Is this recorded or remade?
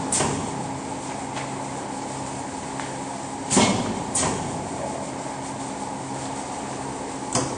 recorded